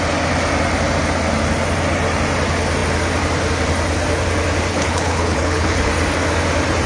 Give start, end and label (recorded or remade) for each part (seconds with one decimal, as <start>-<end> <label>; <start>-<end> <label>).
0.0-4.7 recorded; 4.7-5.9 remade; 5.9-6.9 recorded